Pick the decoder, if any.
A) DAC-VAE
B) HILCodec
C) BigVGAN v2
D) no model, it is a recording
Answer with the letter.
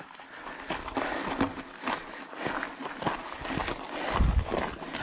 D